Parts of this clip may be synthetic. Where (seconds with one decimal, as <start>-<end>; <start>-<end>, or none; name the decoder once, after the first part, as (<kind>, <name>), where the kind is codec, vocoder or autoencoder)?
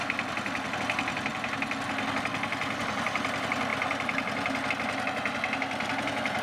none